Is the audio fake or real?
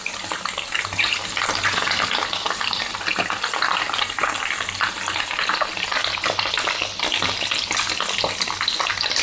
real